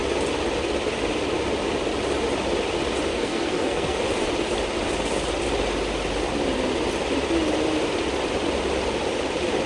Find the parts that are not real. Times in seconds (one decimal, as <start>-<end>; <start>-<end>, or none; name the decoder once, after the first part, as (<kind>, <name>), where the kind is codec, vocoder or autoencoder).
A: 3.1-4.0 (codec, SNAC)